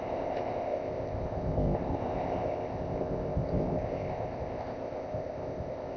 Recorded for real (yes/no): no